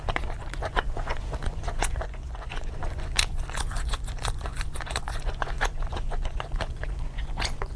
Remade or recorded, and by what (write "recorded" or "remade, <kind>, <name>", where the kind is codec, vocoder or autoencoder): remade, vocoder, Vocos